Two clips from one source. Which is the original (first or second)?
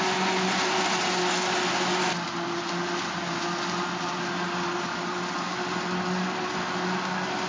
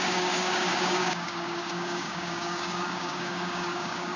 first